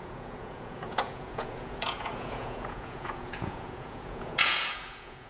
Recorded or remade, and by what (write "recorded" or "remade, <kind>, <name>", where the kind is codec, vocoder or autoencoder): remade, vocoder, Vocos